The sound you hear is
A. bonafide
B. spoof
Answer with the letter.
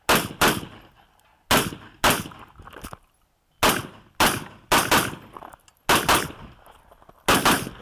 A